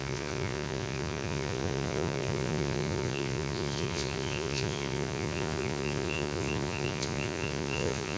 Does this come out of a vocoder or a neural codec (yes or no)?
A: yes